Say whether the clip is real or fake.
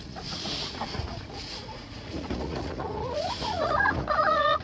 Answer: fake